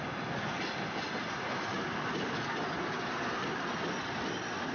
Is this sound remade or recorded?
recorded